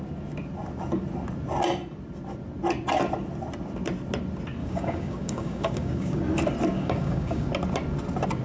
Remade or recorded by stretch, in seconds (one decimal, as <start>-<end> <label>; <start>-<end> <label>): 0.0-4.6 recorded; 4.6-6.2 remade; 6.2-6.7 recorded; 6.7-7.5 remade; 7.5-8.4 recorded